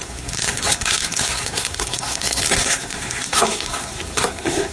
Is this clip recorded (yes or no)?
no